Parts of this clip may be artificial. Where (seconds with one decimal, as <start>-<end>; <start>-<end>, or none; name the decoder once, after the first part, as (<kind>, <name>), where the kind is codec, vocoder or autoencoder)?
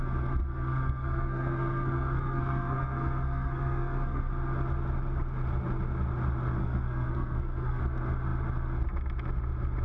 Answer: 0.4-4.3 (codec, SNAC); 6.6-7.8